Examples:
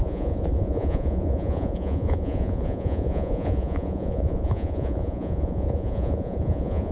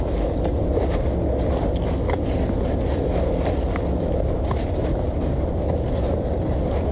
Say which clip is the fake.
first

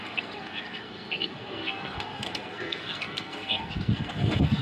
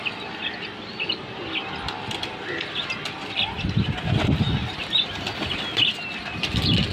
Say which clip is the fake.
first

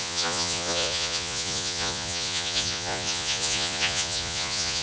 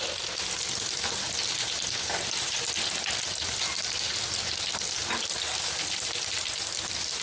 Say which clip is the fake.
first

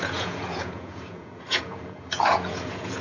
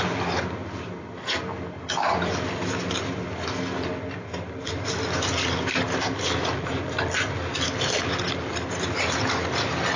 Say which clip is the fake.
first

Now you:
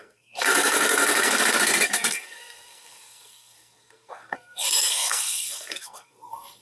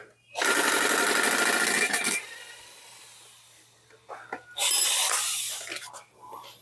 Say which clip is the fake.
first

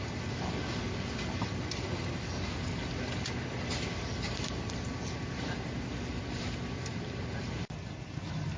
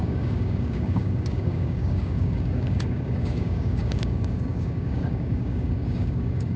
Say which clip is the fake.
second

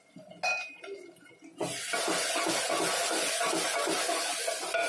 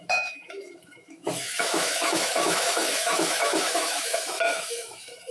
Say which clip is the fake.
second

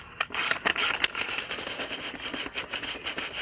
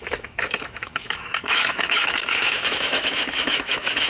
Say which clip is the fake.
second